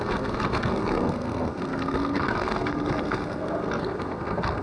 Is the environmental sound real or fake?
fake